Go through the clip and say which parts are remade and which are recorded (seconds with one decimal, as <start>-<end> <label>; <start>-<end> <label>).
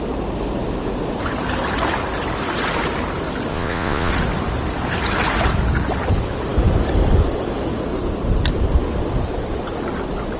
0.0-3.5 recorded; 3.5-4.1 remade; 4.1-10.4 recorded